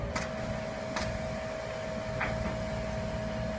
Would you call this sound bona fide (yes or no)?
yes